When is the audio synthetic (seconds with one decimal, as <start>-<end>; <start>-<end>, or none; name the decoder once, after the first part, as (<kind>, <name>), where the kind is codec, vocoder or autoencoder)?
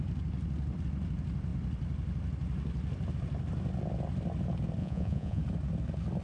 4.8-5.4 (vocoder, Vocos)